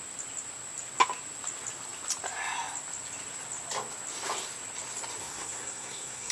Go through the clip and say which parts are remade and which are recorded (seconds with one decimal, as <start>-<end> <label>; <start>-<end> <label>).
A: 0.0-5.2 recorded; 5.2-6.3 remade